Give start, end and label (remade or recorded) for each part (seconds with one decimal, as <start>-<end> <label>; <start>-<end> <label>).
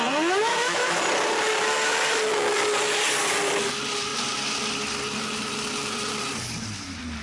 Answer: 0.0-0.5 recorded; 0.5-1.0 remade; 1.0-7.2 recorded